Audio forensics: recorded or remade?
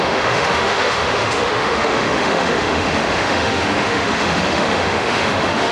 remade